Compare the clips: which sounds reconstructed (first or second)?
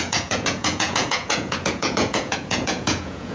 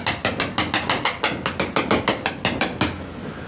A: first